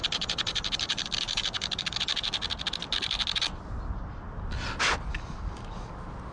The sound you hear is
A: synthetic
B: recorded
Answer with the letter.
B